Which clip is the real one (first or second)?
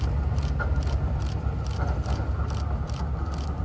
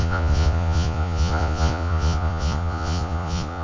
first